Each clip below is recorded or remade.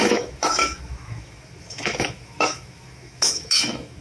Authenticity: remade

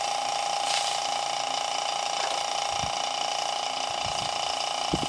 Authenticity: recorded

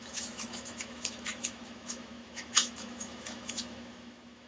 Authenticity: remade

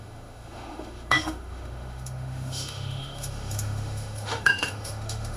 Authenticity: remade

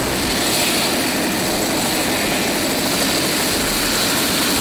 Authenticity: recorded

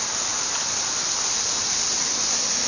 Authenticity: recorded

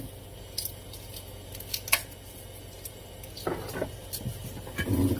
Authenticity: recorded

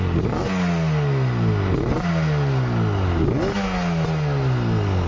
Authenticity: recorded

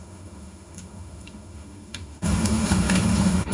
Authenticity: remade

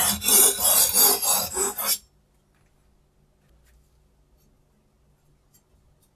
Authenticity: recorded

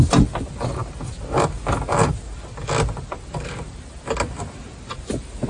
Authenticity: recorded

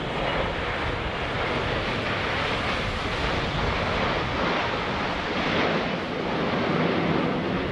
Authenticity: recorded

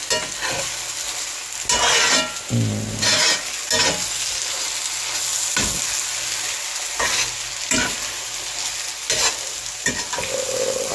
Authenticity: recorded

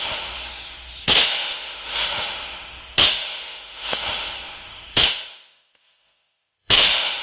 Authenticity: remade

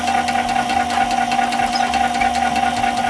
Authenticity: recorded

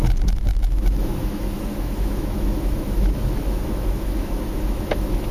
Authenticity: remade